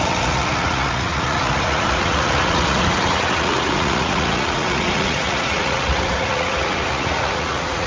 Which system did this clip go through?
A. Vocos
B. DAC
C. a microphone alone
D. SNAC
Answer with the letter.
A